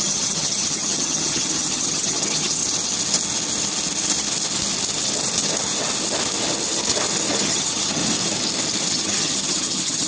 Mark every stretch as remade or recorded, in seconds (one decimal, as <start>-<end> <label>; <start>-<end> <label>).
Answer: 0.0-2.6 remade; 2.6-7.3 recorded; 7.3-8.0 remade; 8.0-8.9 recorded; 8.9-10.1 remade